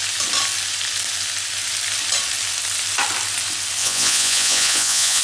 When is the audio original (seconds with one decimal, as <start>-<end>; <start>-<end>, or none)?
0.0-3.8